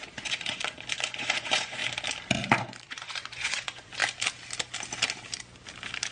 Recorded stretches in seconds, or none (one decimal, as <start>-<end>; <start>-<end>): 1.8-2.6; 4.0-6.1